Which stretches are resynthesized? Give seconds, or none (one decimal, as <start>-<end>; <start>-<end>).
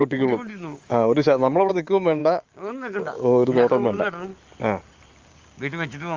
0.0-4.3; 5.2-6.2